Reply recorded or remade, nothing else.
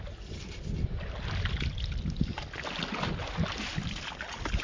recorded